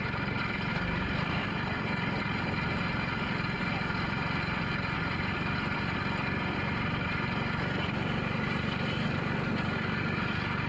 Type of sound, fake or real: real